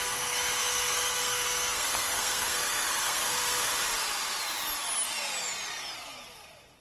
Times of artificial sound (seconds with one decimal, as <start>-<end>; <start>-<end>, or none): 0.0-3.7